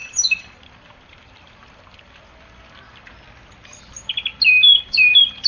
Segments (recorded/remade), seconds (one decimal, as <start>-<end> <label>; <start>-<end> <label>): 0.0-3.1 remade; 3.1-5.5 recorded